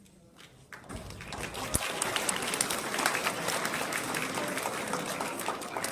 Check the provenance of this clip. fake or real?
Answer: real